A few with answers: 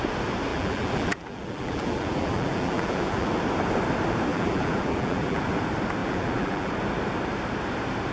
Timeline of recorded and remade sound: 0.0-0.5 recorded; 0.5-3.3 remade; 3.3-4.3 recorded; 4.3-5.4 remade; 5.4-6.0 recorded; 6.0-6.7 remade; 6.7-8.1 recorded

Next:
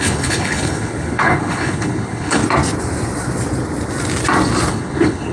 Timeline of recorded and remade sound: 0.0-2.4 remade; 2.4-4.7 recorded; 4.7-5.3 remade